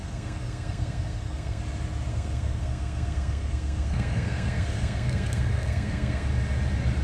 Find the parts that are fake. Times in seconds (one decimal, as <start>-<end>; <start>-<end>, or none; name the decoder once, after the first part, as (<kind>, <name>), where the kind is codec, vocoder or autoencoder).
0.0-1.6 (codec, SNAC); 2.1-6.3